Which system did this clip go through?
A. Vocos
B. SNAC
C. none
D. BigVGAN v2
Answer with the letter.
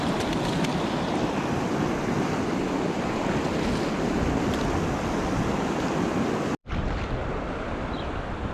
C